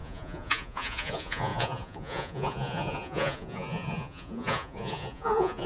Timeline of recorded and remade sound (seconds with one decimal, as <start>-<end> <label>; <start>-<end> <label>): 0.0-5.7 remade